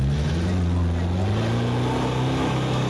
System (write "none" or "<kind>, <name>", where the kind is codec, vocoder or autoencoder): none